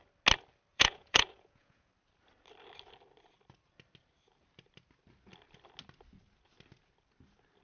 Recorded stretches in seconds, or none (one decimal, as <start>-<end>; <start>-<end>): 0.0-0.7; 1.9-7.6

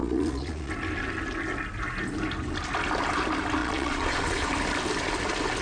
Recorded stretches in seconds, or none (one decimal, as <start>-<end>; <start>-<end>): 0.7-3.6; 4.5-5.6

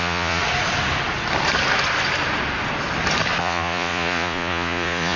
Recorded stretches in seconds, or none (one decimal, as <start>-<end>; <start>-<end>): 0.4-3.4

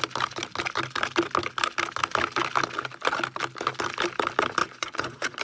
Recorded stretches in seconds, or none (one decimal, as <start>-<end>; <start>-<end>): 0.0-4.6

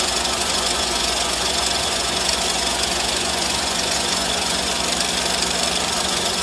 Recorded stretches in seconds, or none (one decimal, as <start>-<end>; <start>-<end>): 4.7-6.0

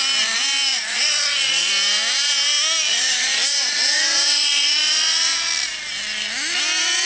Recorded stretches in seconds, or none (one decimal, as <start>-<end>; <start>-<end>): 0.0-0.7; 1.7-2.9; 5.5-7.1